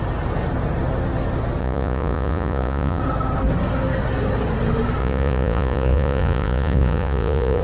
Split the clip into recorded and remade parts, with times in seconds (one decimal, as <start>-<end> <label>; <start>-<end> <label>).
0.0-1.6 recorded; 1.6-3.0 remade; 3.0-5.0 recorded; 5.0-7.6 remade